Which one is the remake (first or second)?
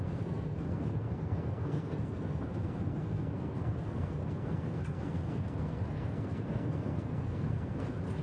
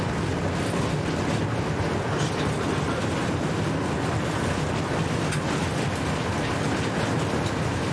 first